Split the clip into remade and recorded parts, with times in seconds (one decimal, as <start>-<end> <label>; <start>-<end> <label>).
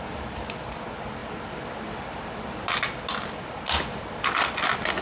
0.0-5.0 recorded